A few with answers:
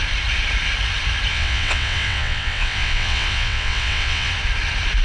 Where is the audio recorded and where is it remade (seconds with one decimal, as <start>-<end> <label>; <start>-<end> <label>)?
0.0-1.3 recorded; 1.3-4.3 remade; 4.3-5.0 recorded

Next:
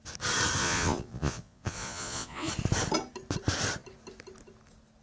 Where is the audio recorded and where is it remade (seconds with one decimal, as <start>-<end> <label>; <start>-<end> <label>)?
0.0-0.6 recorded; 0.6-2.5 remade; 2.5-5.0 recorded

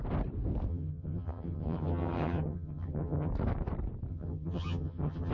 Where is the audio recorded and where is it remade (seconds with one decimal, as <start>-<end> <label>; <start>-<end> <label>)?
0.0-0.7 recorded; 0.7-3.3 remade; 3.3-4.1 recorded; 4.1-5.3 remade

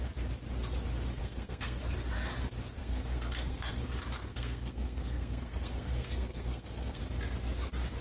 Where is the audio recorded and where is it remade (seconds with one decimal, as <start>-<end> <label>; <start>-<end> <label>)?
0.0-1.2 recorded; 1.2-1.8 remade; 1.8-2.8 recorded; 2.8-3.7 remade; 3.7-4.3 recorded; 4.3-7.0 remade; 7.0-8.0 recorded

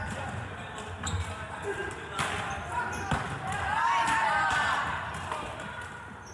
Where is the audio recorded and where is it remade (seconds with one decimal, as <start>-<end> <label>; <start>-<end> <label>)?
0.0-6.3 recorded